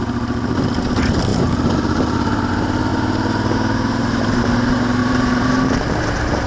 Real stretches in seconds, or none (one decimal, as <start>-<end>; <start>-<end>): 0.0-1.3; 2.5-2.9; 4.4-5.0; 5.8-6.5

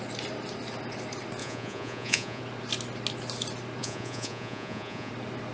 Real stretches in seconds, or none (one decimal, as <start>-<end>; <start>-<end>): 0.0-1.4; 2.4-3.8; 5.1-5.5

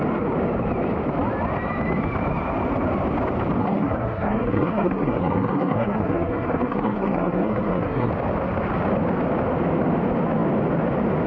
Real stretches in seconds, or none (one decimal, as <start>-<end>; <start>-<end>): 0.0-3.6; 8.1-11.3

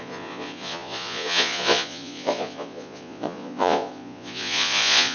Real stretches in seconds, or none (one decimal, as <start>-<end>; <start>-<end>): none

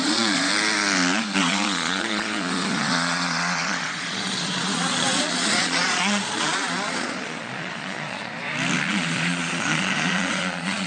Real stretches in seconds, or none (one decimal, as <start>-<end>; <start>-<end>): 0.5-1.4; 8.3-8.9

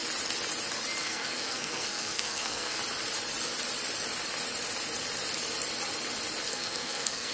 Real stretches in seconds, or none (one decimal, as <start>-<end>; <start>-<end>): 0.0-1.0; 2.8-6.5

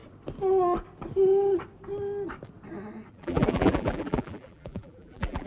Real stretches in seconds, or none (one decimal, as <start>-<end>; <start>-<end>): 0.0-3.1